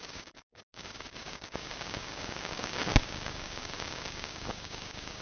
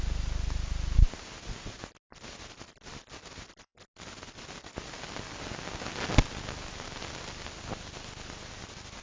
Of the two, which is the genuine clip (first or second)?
second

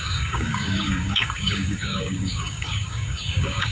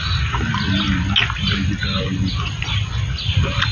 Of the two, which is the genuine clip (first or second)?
second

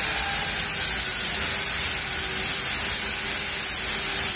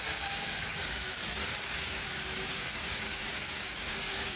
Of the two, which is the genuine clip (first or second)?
first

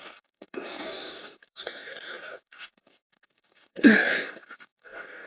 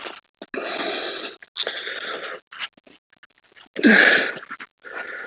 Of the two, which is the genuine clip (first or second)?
second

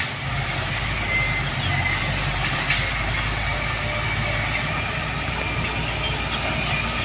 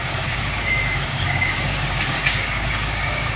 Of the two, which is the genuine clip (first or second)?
first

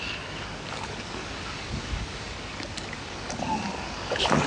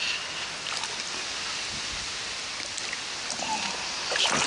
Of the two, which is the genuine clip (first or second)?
second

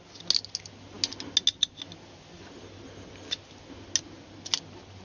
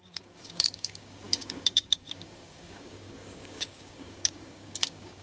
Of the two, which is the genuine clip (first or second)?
first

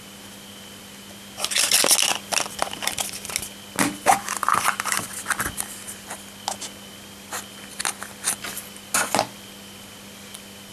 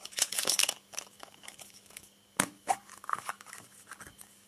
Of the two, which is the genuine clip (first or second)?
first